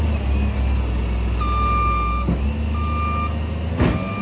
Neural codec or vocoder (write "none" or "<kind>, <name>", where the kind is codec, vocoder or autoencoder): none